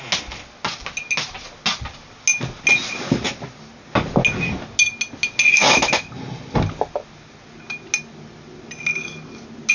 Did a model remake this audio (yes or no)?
no